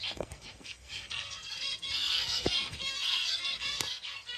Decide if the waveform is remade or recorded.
remade